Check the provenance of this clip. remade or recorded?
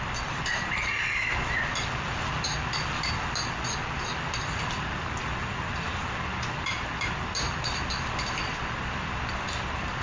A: remade